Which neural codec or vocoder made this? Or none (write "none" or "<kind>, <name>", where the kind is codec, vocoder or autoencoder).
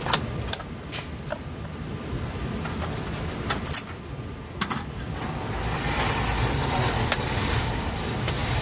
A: none